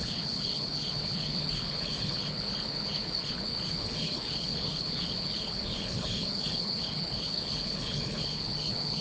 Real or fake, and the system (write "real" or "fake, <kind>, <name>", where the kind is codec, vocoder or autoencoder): fake, codec, HILCodec